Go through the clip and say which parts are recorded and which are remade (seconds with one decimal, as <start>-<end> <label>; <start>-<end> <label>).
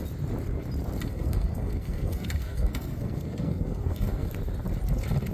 0.0-1.1 recorded; 1.1-4.3 remade; 4.3-5.3 recorded